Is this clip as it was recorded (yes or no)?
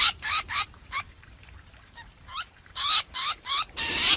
no